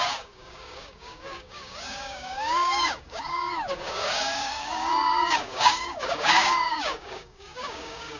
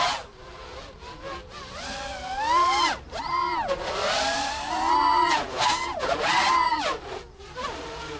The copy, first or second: first